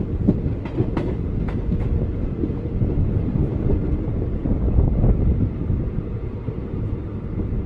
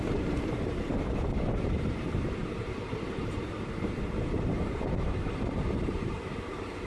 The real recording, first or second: first